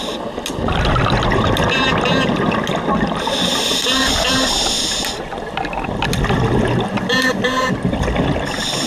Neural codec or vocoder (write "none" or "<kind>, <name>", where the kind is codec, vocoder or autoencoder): none